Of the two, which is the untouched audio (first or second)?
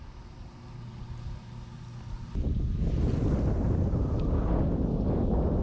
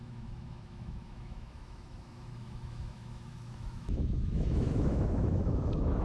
first